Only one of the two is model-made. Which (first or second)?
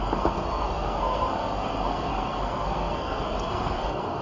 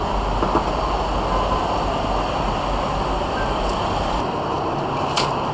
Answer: first